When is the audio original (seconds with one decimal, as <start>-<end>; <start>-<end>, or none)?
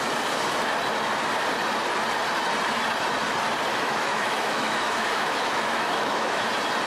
0.0-3.7; 6.5-6.9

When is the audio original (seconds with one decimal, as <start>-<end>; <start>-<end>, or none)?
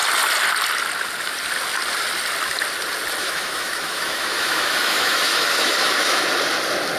0.0-3.2; 6.3-7.0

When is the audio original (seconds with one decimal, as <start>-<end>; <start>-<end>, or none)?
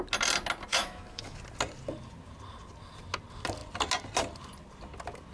0.0-0.7; 1.4-5.3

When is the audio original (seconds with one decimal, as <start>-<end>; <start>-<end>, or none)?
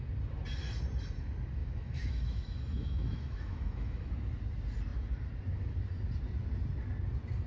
0.0-1.6; 4.1-7.5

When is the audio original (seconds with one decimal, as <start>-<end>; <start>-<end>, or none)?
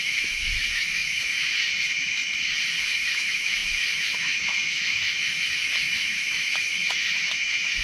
2.2-2.8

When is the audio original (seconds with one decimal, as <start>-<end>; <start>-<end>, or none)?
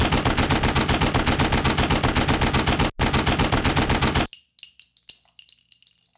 0.0-6.2